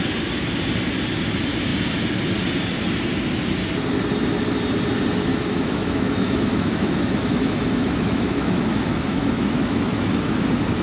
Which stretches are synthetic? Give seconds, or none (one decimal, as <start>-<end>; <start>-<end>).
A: 5.3-10.4